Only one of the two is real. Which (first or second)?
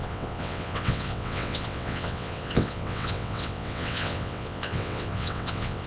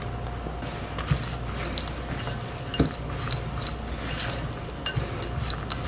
second